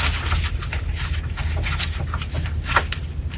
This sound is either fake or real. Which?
real